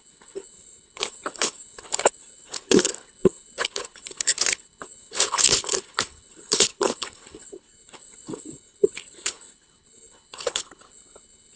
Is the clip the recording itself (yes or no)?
no